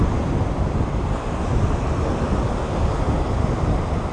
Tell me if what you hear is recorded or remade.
recorded